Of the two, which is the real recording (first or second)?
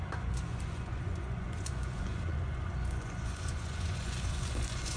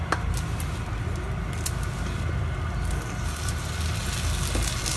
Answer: second